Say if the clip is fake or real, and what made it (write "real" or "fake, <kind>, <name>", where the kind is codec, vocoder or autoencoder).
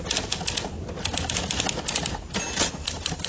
real